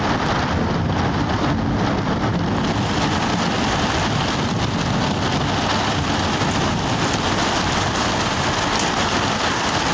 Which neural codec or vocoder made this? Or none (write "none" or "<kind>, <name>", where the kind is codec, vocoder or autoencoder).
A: none